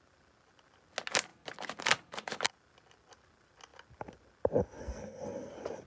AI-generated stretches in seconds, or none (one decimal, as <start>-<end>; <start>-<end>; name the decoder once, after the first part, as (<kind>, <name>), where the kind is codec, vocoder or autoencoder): 4.8-5.5 (codec, SNAC)